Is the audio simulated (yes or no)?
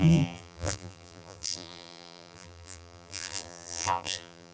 yes